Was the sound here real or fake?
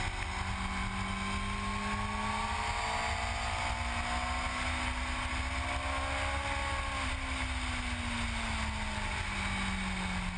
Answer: real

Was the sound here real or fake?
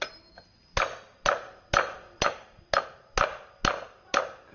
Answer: real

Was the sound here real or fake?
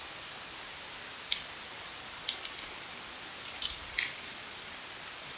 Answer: real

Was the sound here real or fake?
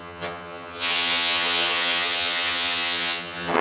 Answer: fake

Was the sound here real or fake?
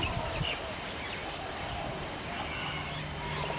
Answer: real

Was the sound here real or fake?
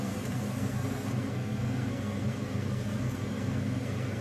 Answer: fake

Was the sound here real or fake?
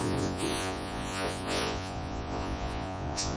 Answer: fake